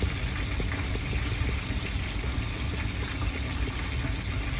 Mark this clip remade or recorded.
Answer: remade